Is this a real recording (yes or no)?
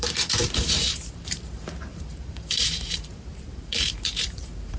no